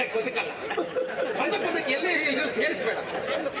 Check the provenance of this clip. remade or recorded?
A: recorded